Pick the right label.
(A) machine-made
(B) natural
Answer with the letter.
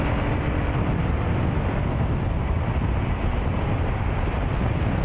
B